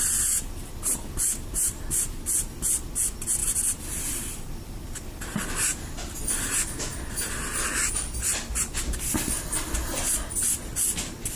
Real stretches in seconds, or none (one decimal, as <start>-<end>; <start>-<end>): 0.0-3.4; 5.5-11.4